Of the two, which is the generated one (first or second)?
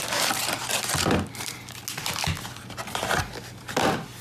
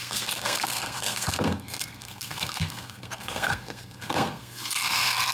second